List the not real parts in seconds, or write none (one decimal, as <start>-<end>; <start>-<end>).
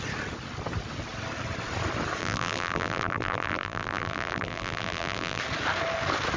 2.2-5.4